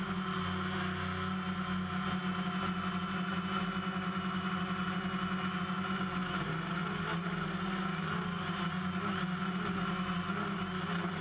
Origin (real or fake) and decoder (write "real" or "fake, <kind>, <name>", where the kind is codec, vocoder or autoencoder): real